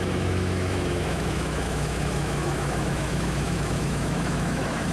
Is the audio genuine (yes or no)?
no